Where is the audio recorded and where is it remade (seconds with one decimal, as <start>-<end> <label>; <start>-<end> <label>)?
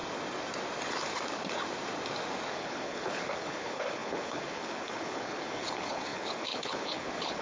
0.0-2.5 recorded; 2.5-7.4 remade